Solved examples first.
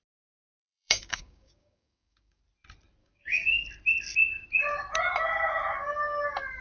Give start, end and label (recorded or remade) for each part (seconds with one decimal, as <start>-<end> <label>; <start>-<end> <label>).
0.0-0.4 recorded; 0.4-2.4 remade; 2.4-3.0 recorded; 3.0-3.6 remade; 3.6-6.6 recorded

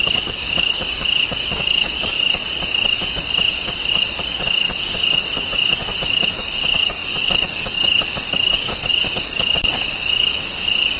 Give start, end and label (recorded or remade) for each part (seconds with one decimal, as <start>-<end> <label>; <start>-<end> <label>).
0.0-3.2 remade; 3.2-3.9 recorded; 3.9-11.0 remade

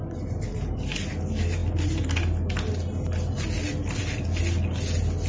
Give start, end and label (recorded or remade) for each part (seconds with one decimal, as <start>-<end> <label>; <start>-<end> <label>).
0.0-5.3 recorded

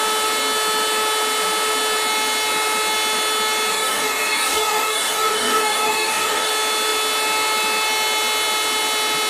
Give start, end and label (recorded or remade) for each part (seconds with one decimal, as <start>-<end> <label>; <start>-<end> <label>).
0.0-3.7 recorded; 3.7-6.5 remade; 6.5-9.3 recorded